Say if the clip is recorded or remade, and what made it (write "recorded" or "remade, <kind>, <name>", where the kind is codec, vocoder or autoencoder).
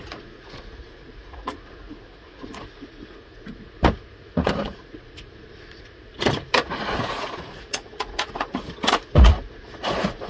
remade, vocoder, Vocos